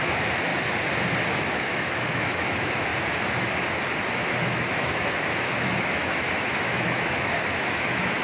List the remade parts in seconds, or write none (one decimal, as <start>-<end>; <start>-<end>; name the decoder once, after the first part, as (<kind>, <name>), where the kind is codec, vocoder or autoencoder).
0.0-0.5 (autoencoder, DAC-VAE); 1.4-2.9; 4.4-8.2